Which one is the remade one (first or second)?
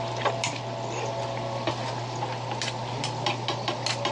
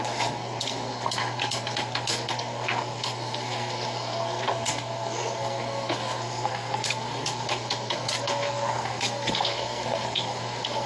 second